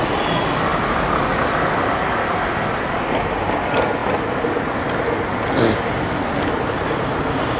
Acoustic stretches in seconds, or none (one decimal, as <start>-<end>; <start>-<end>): 0.0-7.6